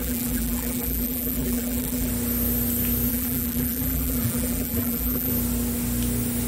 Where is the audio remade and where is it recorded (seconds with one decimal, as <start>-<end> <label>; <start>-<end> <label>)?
0.0-2.1 remade; 2.1-3.1 recorded; 3.1-5.3 remade; 5.3-6.5 recorded